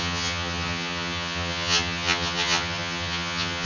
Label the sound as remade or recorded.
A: remade